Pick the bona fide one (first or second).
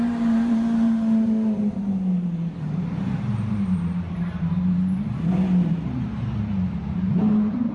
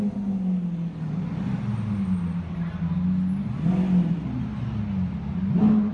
second